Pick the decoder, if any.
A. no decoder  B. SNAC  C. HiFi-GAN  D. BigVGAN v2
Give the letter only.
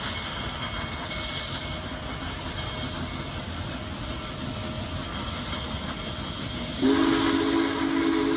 A